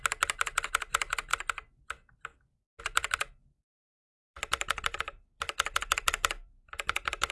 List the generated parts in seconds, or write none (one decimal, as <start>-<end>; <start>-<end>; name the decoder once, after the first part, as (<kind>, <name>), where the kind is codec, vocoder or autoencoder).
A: 3.7-7.3 (vocoder, BigVGAN v2)